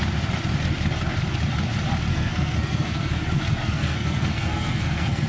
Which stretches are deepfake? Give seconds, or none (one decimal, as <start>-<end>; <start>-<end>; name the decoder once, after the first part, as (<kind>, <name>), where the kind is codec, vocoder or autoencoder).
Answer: 2.1-5.3 (codec, SNAC)